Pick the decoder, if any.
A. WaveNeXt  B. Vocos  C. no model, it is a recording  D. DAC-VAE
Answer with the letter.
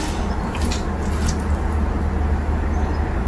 C